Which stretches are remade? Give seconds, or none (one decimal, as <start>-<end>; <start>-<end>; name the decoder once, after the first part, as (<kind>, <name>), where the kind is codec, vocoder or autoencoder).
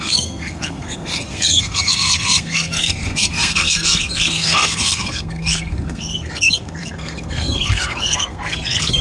0.0-9.0 (codec, SNAC)